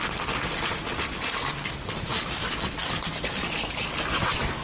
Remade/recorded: recorded